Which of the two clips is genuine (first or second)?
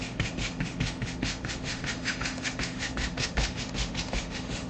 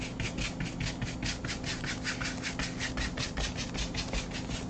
second